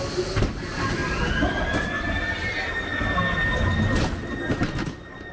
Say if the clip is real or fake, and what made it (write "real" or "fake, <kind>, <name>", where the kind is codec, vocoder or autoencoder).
real